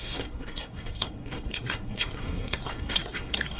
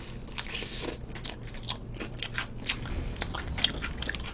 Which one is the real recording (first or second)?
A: second